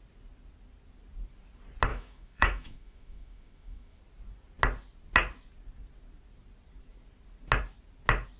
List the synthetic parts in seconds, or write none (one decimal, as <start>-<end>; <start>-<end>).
1.9-4.0